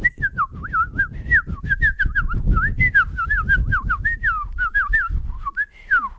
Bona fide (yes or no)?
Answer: yes